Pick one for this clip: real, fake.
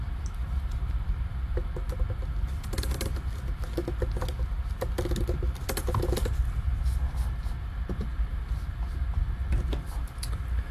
real